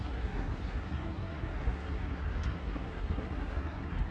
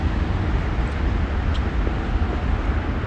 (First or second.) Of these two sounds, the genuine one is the second